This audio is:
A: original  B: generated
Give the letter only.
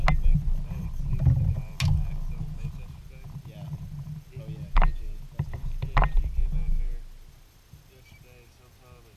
A